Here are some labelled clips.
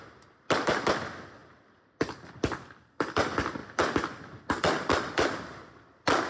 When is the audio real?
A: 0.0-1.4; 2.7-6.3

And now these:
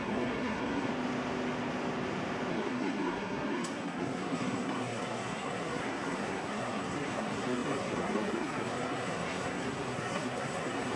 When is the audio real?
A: 0.9-2.5